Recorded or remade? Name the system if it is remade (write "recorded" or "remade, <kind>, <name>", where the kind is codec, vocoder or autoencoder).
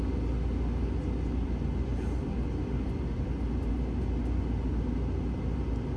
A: recorded